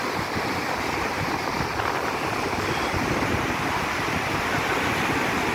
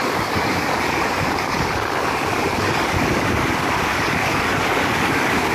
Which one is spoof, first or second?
second